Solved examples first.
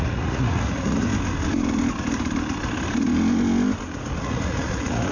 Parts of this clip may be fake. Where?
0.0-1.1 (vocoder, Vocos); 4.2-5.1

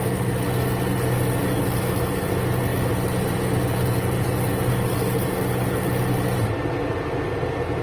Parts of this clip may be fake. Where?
none

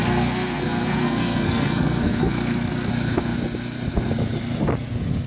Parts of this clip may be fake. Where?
0.0-2.9 (codec, SNAC)

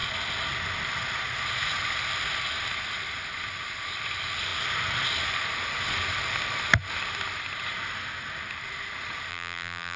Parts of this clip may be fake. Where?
9.3-10.0 (vocoder, BigVGAN v2)